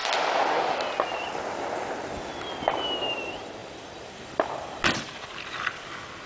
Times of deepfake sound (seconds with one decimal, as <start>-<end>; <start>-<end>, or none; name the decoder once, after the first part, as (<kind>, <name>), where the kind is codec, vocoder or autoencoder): none